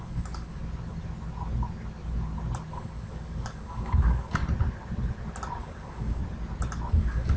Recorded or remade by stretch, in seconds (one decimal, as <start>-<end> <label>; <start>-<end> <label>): 0.0-0.6 remade; 0.6-2.7 recorded; 2.7-4.4 remade; 4.4-5.6 recorded; 5.6-6.2 remade; 6.2-6.9 recorded; 6.9-7.4 remade